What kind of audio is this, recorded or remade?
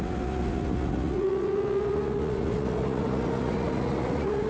remade